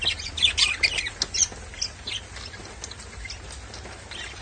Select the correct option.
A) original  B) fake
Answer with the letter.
A